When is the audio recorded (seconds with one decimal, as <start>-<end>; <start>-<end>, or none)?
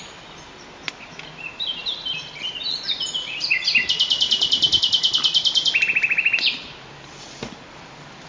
none